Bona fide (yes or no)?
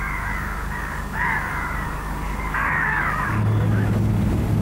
no